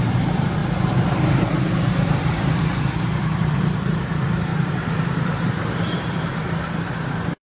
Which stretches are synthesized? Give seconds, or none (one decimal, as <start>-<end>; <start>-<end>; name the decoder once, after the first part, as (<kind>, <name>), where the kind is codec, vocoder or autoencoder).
0.0-0.6 (vocoder, BigVGAN v2); 1.1-7.5